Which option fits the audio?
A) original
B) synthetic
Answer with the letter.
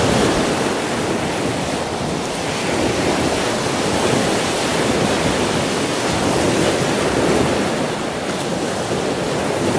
A